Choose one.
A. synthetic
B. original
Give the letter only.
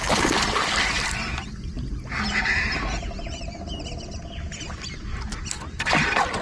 B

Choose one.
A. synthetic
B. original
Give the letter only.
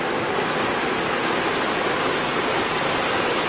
B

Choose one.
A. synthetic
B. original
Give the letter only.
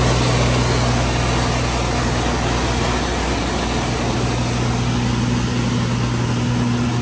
B